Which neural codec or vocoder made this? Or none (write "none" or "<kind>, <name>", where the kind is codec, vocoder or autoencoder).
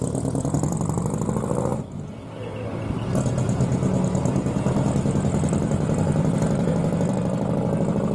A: vocoder, BigVGAN v2